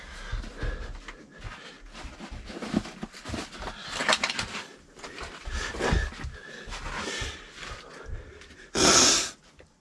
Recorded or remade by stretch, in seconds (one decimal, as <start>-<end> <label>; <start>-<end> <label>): 0.0-9.8 recorded